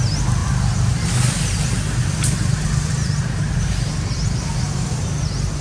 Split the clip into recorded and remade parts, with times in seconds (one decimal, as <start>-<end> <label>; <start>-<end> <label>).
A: 0.0-5.6 recorded